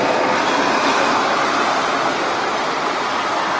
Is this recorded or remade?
recorded